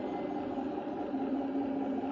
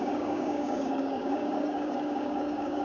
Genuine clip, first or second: first